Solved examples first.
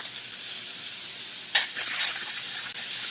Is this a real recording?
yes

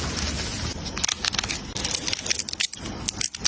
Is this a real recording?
yes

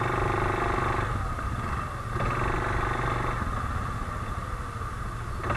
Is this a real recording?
yes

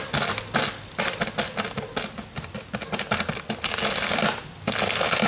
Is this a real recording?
yes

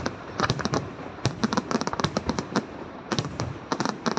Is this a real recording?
no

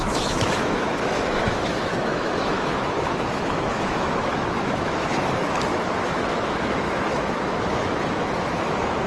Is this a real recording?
no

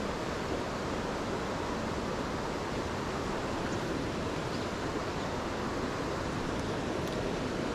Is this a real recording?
yes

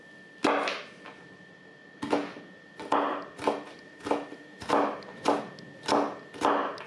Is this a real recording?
yes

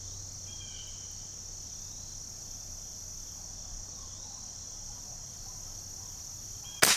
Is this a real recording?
yes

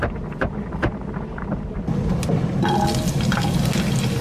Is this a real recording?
yes